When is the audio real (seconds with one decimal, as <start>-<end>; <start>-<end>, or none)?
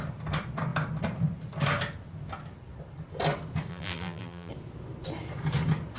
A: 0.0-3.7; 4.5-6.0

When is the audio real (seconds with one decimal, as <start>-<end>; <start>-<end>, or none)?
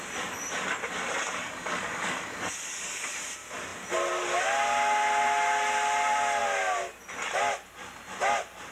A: 0.0-1.4; 3.2-8.7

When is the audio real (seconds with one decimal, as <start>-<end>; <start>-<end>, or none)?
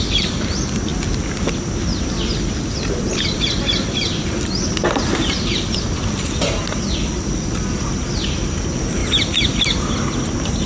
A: 0.0-10.7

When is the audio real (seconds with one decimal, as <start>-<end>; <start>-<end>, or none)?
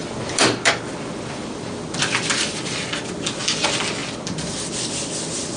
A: 3.4-4.0; 4.7-5.6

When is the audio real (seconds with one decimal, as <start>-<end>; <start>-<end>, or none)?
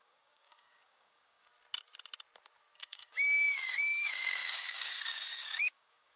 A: 1.5-2.8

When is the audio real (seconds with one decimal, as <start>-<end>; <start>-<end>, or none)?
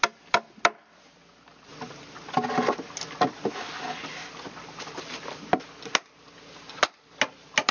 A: 0.0-7.7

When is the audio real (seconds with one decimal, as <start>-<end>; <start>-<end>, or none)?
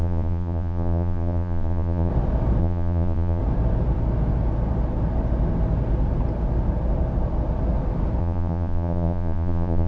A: 2.1-2.6; 3.4-8.2